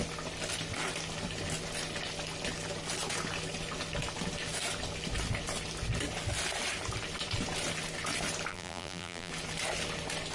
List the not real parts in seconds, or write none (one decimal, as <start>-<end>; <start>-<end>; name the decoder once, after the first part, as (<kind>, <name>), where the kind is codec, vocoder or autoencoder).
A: 8.5-9.3 (vocoder, BigVGAN v2)